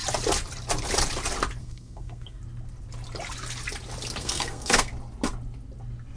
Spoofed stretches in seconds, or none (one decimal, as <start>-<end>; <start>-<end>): 1.6-2.4; 4.2-4.9